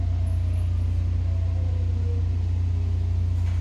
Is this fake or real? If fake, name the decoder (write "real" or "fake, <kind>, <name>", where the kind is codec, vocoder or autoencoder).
real